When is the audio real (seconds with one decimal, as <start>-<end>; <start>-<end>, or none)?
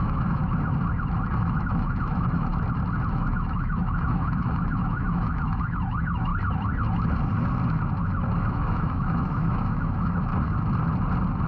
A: 0.4-1.4; 2.5-3.1; 6.3-8.4; 10.3-11.5